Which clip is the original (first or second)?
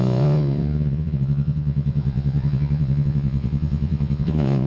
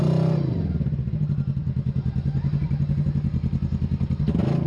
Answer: second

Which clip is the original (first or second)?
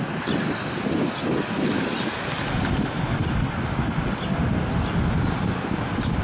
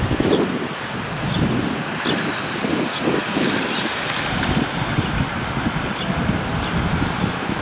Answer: first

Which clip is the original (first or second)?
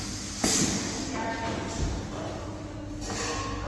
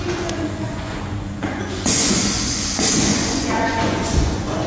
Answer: first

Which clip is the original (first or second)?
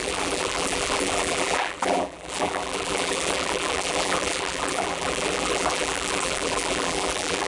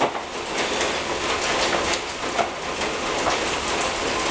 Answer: second